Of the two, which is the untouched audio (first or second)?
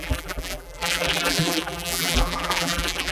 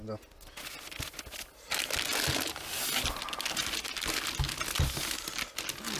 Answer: second